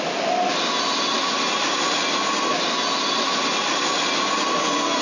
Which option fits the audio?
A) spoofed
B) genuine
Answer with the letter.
B